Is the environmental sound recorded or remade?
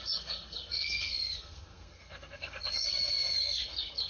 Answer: remade